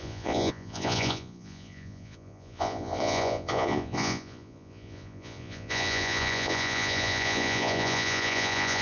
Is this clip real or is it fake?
fake